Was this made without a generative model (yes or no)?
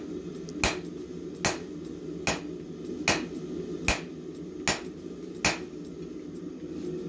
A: yes